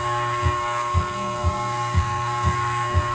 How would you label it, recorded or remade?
remade